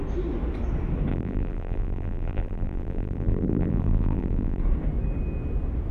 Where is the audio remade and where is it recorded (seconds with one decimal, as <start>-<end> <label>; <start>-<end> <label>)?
0.0-1.1 recorded; 1.1-4.6 remade; 4.6-5.9 recorded